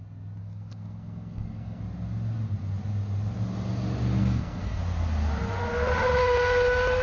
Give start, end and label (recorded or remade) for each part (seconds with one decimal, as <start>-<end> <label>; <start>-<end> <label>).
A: 0.0-0.4 recorded; 0.4-1.8 remade; 1.8-4.2 recorded; 4.2-4.8 remade; 4.8-7.0 recorded